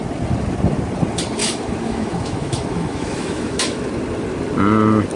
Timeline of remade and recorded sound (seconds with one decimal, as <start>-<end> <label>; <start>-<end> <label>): 0.0-1.4 recorded; 1.4-3.9 remade; 3.9-5.2 recorded